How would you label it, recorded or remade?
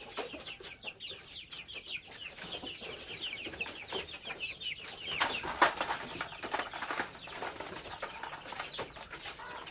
recorded